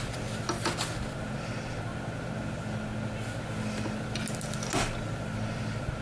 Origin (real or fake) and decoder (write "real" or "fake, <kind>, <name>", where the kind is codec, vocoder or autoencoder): real